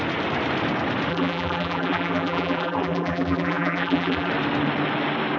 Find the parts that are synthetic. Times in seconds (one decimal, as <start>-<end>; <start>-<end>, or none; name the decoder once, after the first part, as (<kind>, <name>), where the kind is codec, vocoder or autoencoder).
1.1-4.3 (vocoder, BigVGAN v2)

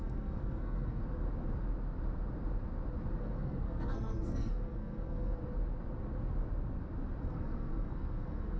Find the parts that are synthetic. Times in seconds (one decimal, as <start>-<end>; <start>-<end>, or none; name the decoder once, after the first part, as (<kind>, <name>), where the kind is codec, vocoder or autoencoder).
0.0-1.0 (codec, SNAC); 3.2-5.4; 7.2-8.6